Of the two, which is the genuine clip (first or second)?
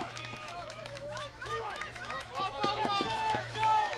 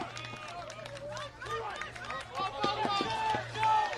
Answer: second